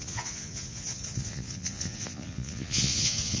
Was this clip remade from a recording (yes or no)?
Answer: yes